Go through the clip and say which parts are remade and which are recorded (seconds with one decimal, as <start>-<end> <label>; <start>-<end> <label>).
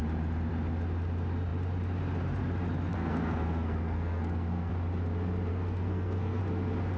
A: 0.0-2.9 recorded; 2.9-4.7 remade; 4.7-5.5 recorded; 5.5-6.4 remade; 6.4-7.0 recorded